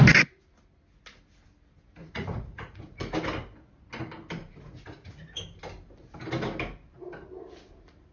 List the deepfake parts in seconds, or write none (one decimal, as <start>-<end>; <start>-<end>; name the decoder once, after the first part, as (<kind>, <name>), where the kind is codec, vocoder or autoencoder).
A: 2.0-3.0 (vocoder, Vocos); 4.4-5.4